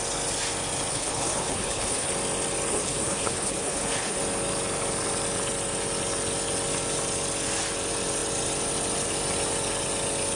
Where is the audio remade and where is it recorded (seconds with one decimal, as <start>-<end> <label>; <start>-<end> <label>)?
0.0-0.9 recorded; 0.9-2.1 remade; 2.1-2.7 recorded; 2.7-4.2 remade; 4.2-10.4 recorded